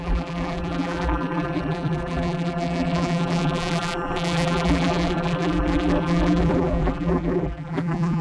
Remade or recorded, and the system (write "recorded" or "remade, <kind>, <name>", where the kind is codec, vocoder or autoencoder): remade, vocoder, BigVGAN v2